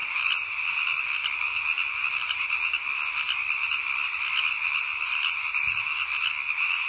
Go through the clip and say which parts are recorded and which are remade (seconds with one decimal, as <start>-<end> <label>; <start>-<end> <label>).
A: 0.0-6.9 recorded